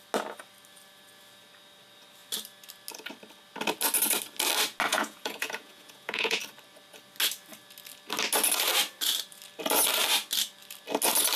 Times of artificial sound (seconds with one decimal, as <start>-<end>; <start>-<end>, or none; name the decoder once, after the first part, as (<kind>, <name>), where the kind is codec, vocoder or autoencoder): 4.9-6.4 (vocoder, Vocos)